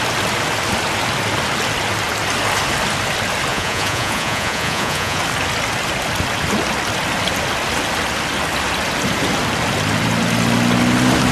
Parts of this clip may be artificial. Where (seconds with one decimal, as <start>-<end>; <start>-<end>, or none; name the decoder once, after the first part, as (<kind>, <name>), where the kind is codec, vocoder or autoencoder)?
3.5-5.2 (vocoder, Vocos)